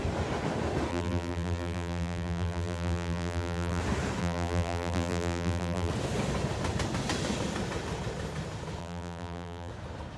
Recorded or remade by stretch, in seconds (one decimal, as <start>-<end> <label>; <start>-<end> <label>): 0.0-0.9 recorded; 0.9-3.8 remade; 3.8-4.2 recorded; 4.2-5.9 remade; 5.9-8.8 recorded; 8.8-9.7 remade; 9.7-10.2 recorded